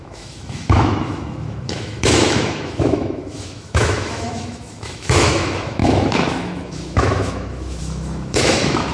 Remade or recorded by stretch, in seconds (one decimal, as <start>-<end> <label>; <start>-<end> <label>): 0.0-8.9 remade